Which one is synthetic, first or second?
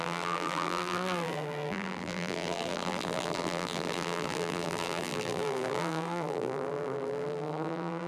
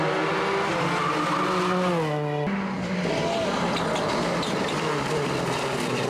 first